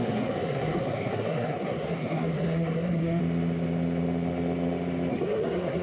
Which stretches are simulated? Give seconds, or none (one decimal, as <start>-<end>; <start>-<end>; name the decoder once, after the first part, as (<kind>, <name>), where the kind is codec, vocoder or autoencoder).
0.0-3.2 (codec, SNAC); 5.1-5.8